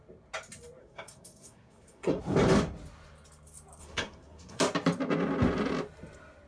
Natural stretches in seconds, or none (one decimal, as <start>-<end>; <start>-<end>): 0.0-0.8; 2.2-3.8; 4.6-6.5